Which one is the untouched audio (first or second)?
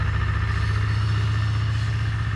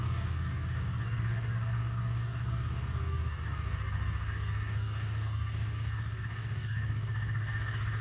first